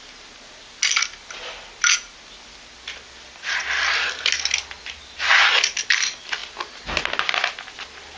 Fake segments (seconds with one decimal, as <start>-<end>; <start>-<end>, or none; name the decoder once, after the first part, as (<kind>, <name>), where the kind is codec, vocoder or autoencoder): none